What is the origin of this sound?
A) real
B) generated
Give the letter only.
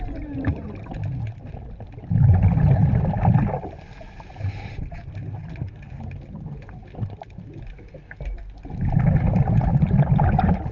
A